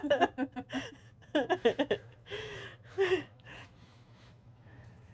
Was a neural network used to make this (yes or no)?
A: yes